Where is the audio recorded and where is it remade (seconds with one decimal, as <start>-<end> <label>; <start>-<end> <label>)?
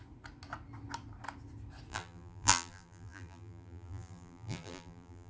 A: 0.0-1.9 recorded; 1.9-5.3 remade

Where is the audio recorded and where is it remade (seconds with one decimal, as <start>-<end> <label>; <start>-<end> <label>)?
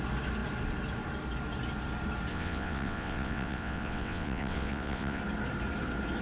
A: 0.0-2.3 recorded; 2.3-5.2 remade; 5.2-6.2 recorded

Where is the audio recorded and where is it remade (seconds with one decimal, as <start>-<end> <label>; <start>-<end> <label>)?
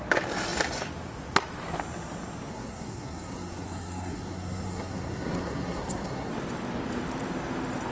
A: 0.0-2.5 recorded; 2.5-6.3 remade; 6.3-7.9 recorded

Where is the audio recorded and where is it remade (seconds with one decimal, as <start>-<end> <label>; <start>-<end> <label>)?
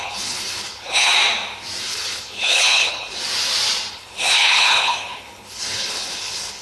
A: 0.0-1.1 remade; 1.1-1.8 recorded; 1.8-3.2 remade; 3.2-3.9 recorded; 3.9-6.6 remade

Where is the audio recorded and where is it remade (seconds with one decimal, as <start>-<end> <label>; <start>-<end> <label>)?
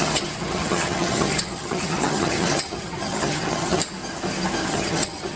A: 0.0-3.8 remade; 3.8-4.7 recorded; 4.7-5.4 remade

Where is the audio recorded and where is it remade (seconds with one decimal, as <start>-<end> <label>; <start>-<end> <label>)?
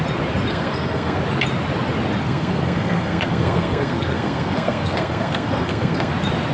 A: 0.0-0.5 recorded; 0.5-1.2 remade; 1.2-2.2 recorded; 2.2-6.1 remade; 6.1-6.5 recorded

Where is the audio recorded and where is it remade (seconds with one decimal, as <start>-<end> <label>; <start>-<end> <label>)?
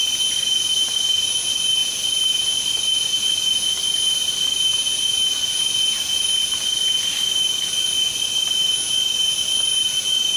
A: 0.0-10.4 recorded